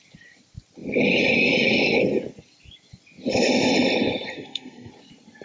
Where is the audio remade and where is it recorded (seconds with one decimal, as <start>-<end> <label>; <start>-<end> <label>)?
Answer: 0.0-4.3 recorded; 4.3-4.9 remade; 4.9-5.4 recorded